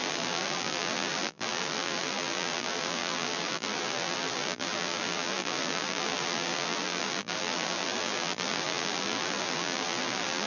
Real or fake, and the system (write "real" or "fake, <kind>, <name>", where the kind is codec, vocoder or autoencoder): fake, vocoder, BigVGAN v2